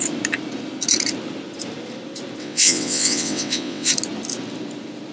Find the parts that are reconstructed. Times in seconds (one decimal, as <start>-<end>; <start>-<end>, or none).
2.4-3.9